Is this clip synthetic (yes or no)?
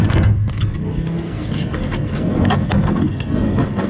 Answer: yes